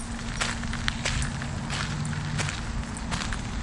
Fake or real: real